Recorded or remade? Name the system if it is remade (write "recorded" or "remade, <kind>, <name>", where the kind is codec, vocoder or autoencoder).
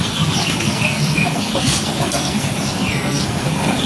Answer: remade, codec, SNAC